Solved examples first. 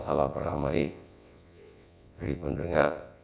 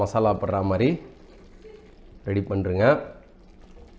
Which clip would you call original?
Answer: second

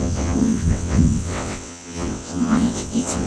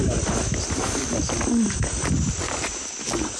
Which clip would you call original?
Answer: second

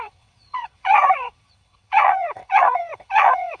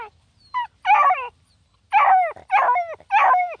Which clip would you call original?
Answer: second